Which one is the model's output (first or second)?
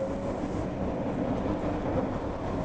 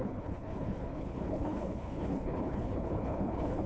second